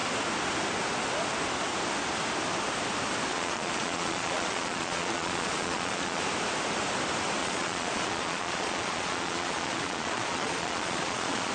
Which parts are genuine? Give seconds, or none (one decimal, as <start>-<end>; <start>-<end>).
0.0-3.3; 6.2-7.4